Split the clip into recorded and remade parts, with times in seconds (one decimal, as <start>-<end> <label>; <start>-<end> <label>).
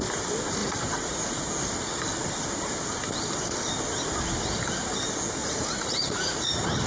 0.0-0.6 recorded; 0.6-1.5 remade; 1.5-5.4 recorded; 5.4-6.5 remade; 6.5-6.9 recorded